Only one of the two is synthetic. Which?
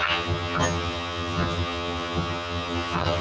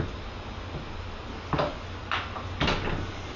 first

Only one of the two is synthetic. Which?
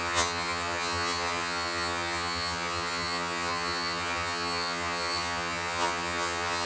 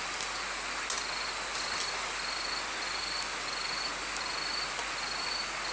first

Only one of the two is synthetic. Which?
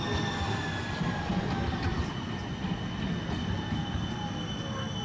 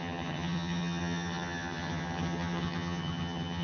second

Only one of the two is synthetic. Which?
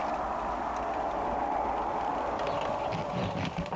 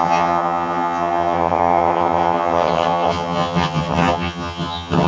second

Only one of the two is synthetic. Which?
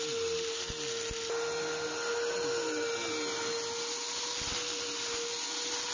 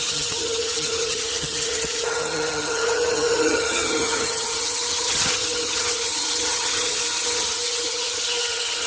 second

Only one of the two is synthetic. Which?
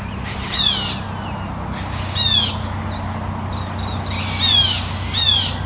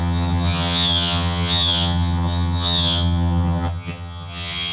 second